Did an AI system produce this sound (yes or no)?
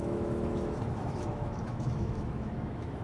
yes